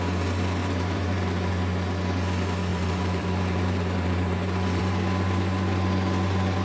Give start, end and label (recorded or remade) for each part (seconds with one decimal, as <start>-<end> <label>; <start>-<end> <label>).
0.0-0.6 recorded; 0.6-1.5 remade; 1.5-2.7 recorded; 2.7-4.8 remade; 4.8-6.6 recorded